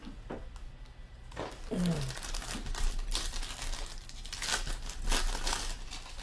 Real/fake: real